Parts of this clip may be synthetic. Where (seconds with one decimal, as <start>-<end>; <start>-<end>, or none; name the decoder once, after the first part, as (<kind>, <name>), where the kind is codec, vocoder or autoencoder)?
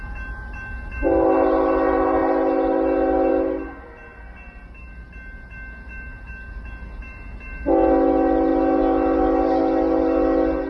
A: none